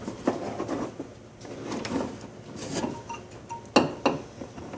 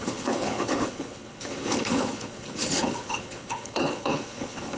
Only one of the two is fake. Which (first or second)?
second